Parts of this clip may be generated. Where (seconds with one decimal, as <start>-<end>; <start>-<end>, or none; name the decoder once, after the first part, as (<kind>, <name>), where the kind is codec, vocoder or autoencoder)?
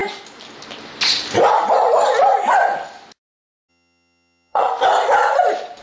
3.7-4.7 (vocoder, HiFi-GAN)